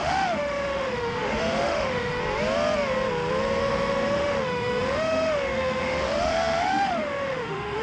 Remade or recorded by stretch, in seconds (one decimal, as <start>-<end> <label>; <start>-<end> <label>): 0.0-2.2 remade; 2.2-3.6 recorded; 3.6-7.8 remade